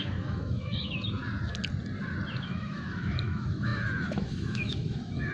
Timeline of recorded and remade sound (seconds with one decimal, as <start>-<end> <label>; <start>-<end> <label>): 0.0-1.2 remade; 1.2-2.4 recorded; 2.4-5.3 remade